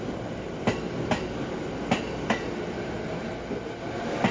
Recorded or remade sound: recorded